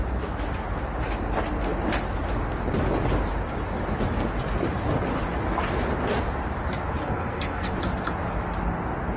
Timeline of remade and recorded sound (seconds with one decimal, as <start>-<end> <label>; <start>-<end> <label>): 0.0-7.0 recorded; 7.0-7.7 remade; 7.7-9.2 recorded

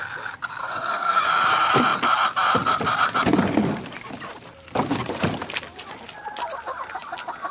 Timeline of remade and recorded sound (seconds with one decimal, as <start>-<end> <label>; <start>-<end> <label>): 0.0-0.6 recorded; 0.6-1.2 remade; 1.2-7.5 recorded

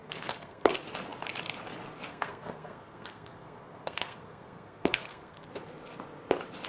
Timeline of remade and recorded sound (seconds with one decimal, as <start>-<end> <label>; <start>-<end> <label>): 0.0-0.7 remade; 0.7-2.1 recorded; 2.1-5.5 remade; 5.5-6.7 recorded

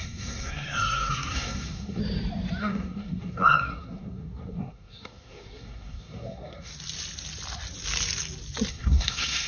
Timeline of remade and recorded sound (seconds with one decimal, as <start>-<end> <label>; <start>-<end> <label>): 0.0-2.0 remade; 2.0-2.6 recorded; 2.6-6.7 remade; 6.7-8.7 recorded; 8.7-9.5 remade

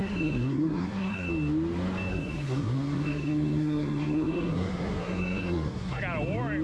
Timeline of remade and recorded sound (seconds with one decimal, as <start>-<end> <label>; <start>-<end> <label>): 0.0-1.3 remade; 1.3-2.1 recorded; 2.1-6.0 remade; 6.0-6.6 recorded

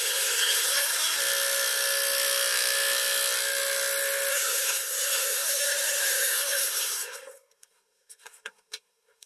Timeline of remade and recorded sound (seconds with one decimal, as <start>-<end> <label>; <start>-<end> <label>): 0.0-1.2 remade; 1.2-4.3 recorded; 4.3-9.3 remade

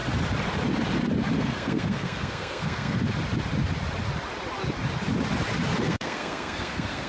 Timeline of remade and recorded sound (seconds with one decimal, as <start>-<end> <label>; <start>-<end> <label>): 0.0-1.4 recorded; 1.4-3.0 remade; 3.0-5.8 recorded; 5.8-7.1 remade

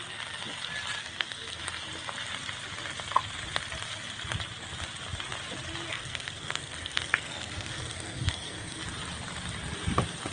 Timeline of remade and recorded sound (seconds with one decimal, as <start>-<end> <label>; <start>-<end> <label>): 0.0-1.0 recorded; 1.0-1.6 remade; 1.6-5.9 recorded; 5.9-8.8 remade; 8.8-10.3 recorded